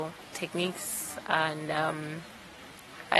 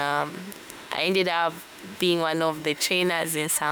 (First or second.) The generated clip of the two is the second